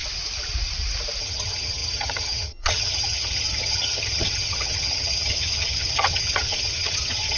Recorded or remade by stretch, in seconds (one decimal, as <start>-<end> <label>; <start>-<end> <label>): 0.0-1.2 recorded; 1.2-7.4 remade